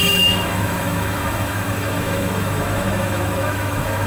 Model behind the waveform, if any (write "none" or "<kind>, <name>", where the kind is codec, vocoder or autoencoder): autoencoder, DAC-VAE